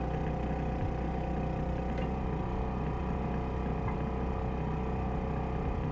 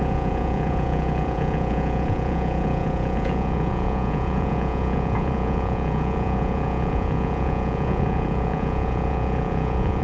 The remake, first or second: second